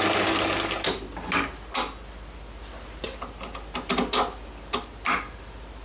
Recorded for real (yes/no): yes